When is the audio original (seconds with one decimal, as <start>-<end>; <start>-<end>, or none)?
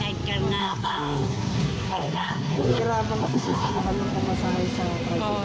0.0-0.6; 2.8-3.2; 3.8-5.4